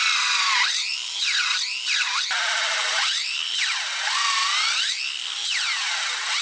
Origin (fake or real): real